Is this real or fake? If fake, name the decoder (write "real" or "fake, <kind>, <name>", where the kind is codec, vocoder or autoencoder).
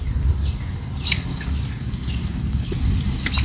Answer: real